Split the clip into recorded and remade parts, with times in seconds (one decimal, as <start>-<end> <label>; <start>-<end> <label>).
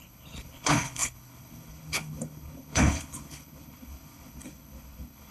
0.0-5.3 remade